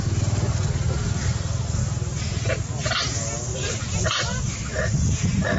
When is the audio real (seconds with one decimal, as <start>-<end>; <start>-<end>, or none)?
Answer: 0.0-3.5; 4.4-5.6